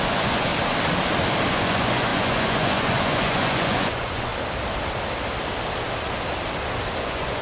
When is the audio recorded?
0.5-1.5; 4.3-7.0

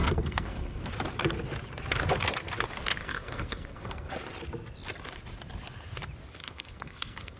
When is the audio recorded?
0.9-3.0; 4.1-6.4

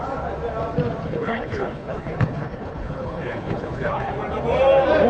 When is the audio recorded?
0.0-1.0; 4.1-5.1

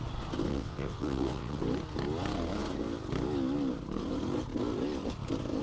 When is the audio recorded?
0.0-0.5; 1.6-5.6

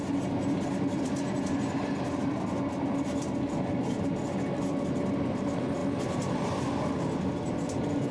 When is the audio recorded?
0.0-8.1

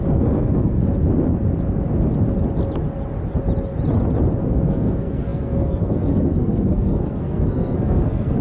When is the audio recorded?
0.8-4.4